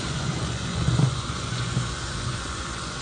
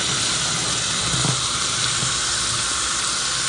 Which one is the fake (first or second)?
first